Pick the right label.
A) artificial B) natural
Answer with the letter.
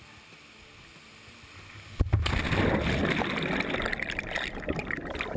B